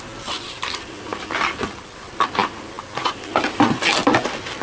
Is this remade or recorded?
remade